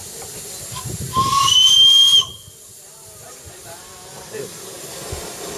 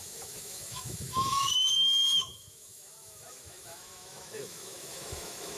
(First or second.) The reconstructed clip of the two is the second